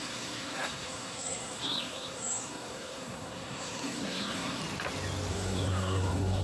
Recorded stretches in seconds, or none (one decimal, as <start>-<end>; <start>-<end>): 4.6-5.3